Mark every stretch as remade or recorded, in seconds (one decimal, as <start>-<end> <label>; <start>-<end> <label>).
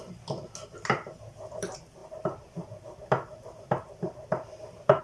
0.0-2.0 recorded; 2.0-5.0 remade